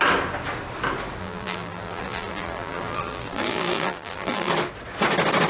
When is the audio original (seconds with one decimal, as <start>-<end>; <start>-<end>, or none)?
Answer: 0.0-1.2; 4.5-5.5